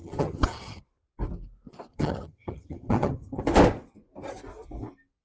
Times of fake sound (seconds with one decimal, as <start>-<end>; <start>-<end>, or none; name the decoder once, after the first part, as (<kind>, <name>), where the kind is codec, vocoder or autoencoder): 0.0-0.8 (vocoder, HiFi-GAN); 1.9-3.4